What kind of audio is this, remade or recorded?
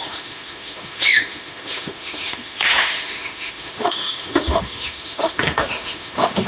remade